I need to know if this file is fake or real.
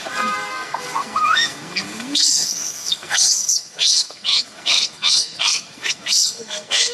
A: fake